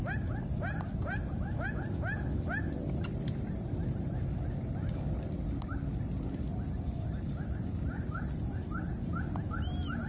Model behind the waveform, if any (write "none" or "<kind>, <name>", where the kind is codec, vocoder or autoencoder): none